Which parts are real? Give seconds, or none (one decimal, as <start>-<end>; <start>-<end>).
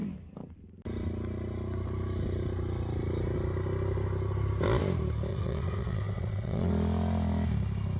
0.0-5.3; 6.7-8.0